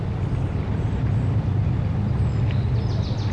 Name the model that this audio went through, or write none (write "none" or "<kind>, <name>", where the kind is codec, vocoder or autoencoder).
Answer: none